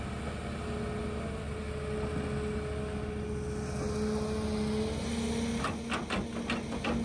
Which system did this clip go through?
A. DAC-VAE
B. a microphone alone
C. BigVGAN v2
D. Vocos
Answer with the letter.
B